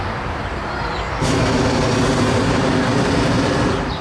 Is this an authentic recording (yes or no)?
yes